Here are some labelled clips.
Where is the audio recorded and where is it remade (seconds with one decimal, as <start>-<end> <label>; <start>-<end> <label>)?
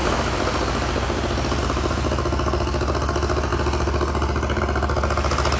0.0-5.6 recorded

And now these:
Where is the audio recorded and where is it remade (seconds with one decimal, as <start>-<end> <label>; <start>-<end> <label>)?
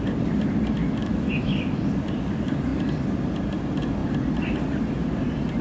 0.0-0.8 recorded; 0.8-1.6 remade; 1.6-5.6 recorded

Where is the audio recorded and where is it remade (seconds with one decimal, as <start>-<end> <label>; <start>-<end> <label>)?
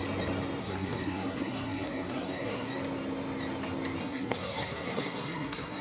0.0-0.6 recorded; 0.6-2.7 remade; 2.7-4.0 recorded; 4.0-5.8 remade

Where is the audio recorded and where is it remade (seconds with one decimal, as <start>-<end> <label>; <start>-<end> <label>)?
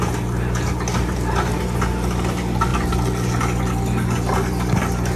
0.0-5.2 recorded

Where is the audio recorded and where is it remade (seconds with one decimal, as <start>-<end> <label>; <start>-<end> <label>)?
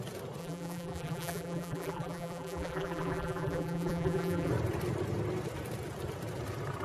0.0-0.4 recorded; 0.4-4.5 remade; 4.5-6.8 recorded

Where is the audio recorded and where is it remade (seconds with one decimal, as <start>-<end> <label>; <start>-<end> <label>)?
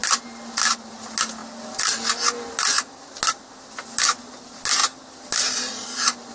0.0-6.3 recorded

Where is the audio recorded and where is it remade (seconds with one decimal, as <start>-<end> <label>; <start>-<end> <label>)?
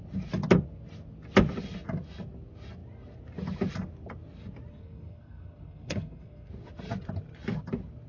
0.0-4.7 recorded; 4.7-6.5 remade; 6.5-8.1 recorded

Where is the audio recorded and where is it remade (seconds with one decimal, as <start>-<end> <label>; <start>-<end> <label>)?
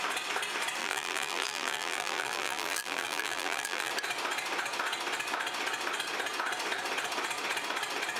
0.0-0.8 recorded; 0.8-3.9 remade; 3.9-8.2 recorded